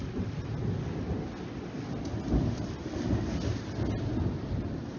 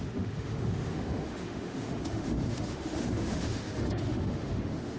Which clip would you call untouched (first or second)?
first